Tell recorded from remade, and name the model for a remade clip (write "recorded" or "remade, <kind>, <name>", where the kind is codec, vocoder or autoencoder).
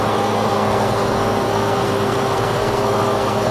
remade, codec, SNAC